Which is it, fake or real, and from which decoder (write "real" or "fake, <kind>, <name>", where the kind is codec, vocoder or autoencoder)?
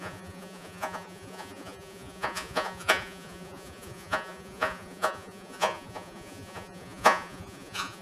fake, vocoder, Vocos